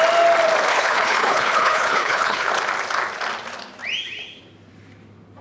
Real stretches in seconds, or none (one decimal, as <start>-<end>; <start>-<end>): 0.0-0.7; 2.5-5.4